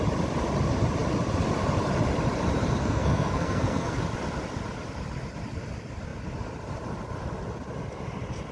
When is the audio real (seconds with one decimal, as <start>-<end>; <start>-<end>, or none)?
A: 0.0-2.8; 4.0-8.5